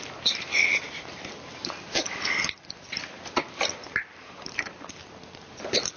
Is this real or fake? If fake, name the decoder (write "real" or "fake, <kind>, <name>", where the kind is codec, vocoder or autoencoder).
real